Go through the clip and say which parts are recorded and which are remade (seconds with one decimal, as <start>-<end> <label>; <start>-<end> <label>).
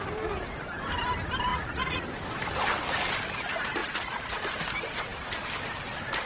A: 0.0-1.5 recorded; 1.5-2.1 remade; 2.1-3.8 recorded; 3.8-4.4 remade; 4.4-6.3 recorded